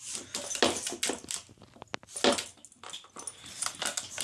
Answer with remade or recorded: recorded